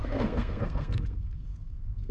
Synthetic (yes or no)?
yes